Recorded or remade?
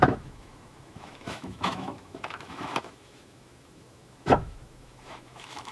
remade